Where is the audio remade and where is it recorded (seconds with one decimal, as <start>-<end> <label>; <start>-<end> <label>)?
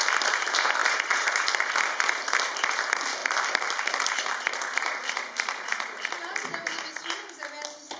0.0-0.8 recorded; 0.8-1.7 remade; 1.7-8.0 recorded